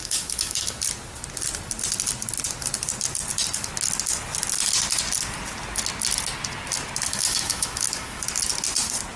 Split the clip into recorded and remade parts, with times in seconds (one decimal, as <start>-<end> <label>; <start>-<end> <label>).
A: 0.0-0.8 remade; 0.8-7.1 recorded; 7.1-8.2 remade; 8.2-9.2 recorded